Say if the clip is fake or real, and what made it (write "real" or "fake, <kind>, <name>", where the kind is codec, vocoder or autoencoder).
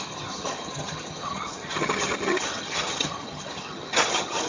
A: fake, vocoder, HiFi-GAN